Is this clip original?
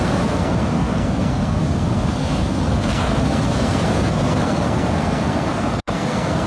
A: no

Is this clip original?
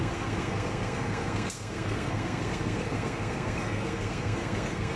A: no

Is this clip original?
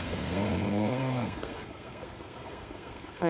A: no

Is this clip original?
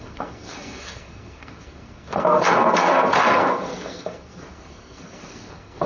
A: no